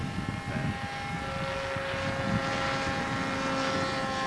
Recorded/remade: recorded